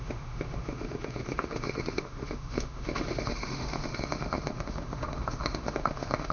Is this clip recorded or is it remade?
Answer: remade